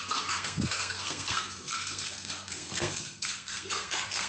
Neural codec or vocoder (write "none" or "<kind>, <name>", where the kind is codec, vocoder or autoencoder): codec, SNAC